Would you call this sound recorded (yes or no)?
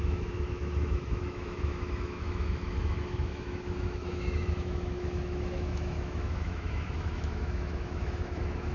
no